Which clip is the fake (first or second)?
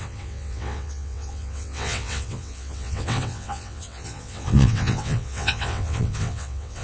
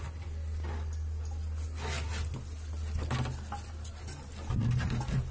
first